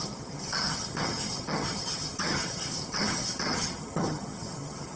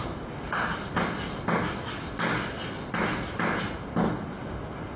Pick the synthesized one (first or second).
first